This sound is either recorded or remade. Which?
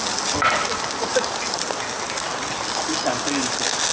recorded